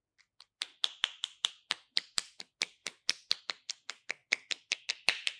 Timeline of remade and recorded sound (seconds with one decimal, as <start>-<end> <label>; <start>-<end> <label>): 0.0-5.4 recorded